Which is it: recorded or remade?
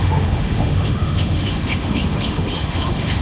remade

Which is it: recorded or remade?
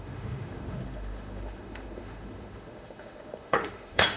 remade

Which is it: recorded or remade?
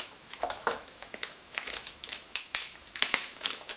remade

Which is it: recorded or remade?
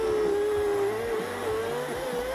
recorded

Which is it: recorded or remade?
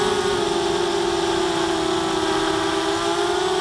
recorded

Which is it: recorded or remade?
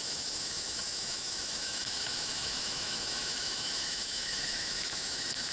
remade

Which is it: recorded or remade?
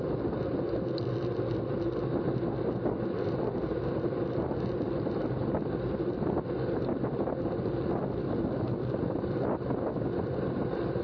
recorded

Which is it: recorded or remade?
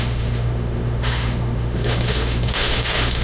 remade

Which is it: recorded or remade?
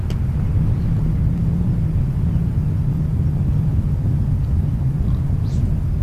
recorded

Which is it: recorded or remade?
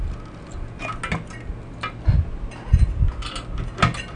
recorded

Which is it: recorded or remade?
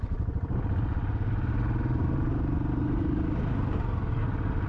recorded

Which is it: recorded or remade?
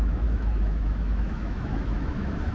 remade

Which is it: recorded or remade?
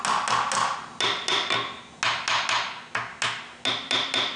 recorded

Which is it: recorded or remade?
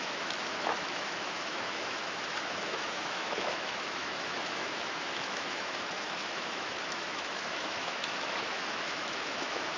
remade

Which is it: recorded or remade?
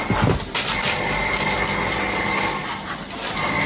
recorded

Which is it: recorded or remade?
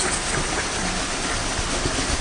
recorded